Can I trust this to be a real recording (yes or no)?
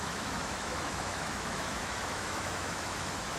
no